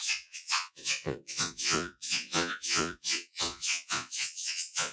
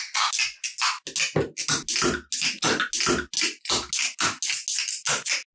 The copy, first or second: first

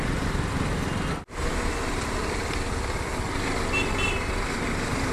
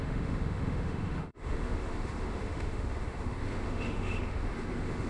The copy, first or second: second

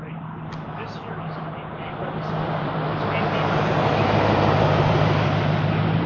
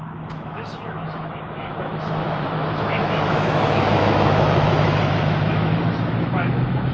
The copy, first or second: second